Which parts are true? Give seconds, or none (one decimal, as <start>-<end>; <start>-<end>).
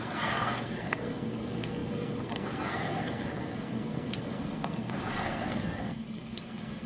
none